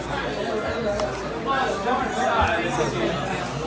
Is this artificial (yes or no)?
no